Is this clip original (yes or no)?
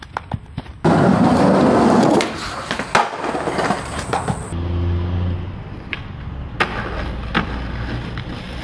yes